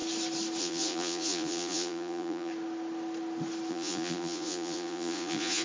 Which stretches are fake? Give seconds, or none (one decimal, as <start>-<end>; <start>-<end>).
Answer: 0.6-2.5; 3.7-5.6